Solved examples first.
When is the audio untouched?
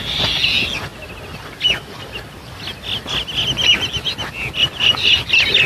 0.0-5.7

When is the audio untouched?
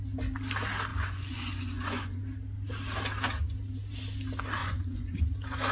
0.0-0.9; 2.2-4.6; 5.2-5.7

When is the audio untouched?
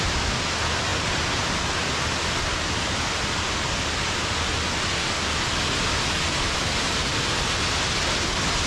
0.0-8.7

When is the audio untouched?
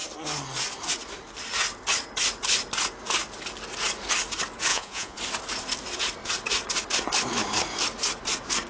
0.0-4.7; 5.2-8.7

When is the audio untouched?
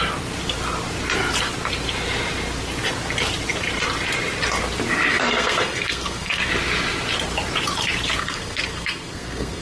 0.0-5.1; 6.5-8.2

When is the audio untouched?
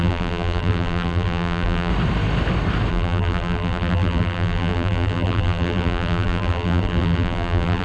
1.9-2.9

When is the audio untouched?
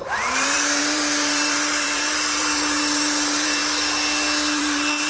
3.6-4.6